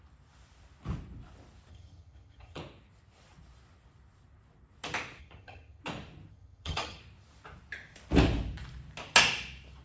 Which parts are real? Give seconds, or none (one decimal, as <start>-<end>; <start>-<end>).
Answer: 0.0-1.7; 2.6-5.2; 5.8-6.3; 7.0-9.8